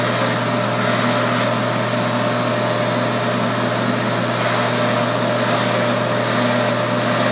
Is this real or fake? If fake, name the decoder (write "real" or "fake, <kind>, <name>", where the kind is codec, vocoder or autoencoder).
real